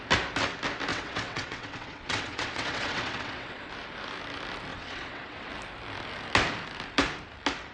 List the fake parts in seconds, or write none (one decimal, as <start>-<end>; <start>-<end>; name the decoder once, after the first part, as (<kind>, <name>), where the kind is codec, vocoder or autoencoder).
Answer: 0.9-3.7 (vocoder, WaveNeXt); 4.7-5.5